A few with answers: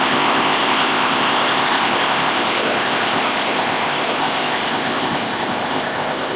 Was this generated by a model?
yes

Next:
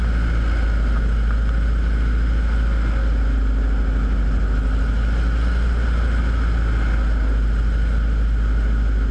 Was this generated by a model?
no